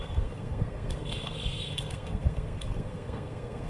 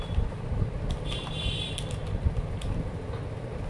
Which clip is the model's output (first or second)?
first